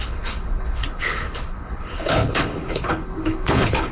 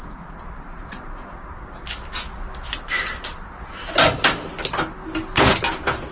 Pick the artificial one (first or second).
first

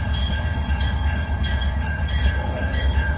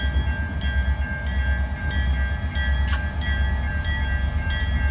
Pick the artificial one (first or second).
first